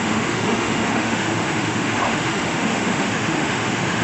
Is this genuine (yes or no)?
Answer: no